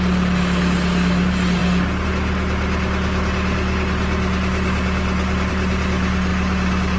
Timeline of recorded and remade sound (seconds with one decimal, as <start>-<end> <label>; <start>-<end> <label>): 0.0-7.0 recorded